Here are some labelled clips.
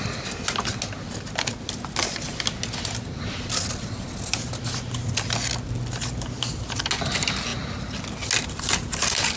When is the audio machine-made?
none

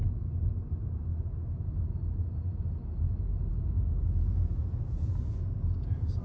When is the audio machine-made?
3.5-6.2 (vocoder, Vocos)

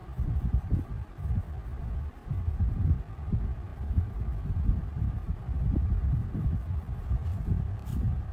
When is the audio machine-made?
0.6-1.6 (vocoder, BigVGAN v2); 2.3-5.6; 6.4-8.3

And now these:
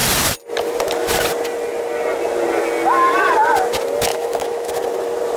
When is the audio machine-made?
4.1-4.7 (autoencoder, DAC-VAE)